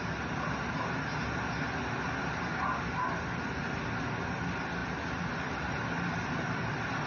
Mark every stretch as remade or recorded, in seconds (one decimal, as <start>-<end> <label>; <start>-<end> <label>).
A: 0.0-7.1 recorded